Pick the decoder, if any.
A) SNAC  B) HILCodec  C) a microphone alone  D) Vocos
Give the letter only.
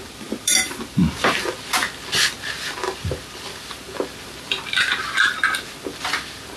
C